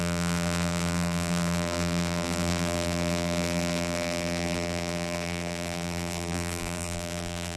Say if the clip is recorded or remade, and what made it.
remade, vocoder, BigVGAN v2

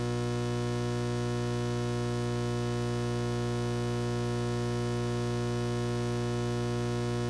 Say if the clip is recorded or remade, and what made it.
recorded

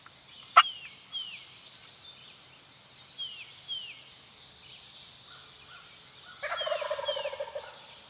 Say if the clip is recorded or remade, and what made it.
recorded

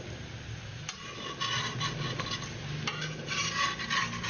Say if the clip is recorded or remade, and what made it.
recorded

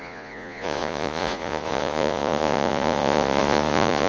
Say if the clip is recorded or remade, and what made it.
remade, vocoder, Vocos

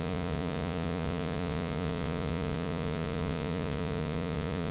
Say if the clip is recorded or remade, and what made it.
remade, vocoder, Vocos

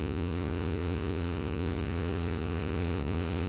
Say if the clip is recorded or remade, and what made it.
remade, vocoder, Vocos